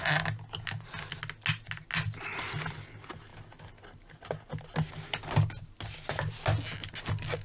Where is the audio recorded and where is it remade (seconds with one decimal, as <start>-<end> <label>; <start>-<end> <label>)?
0.0-7.4 recorded